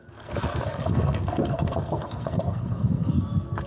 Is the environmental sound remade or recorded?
remade